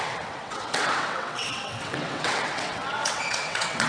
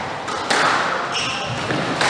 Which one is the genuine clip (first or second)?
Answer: second